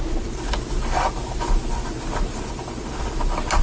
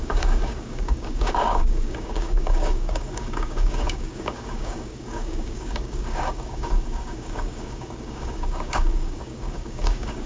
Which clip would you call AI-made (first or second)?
second